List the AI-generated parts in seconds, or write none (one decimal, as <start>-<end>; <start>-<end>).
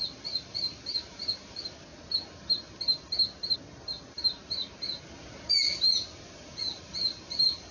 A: none